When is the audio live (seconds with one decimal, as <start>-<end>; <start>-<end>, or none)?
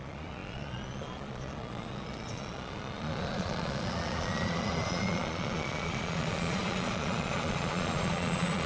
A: none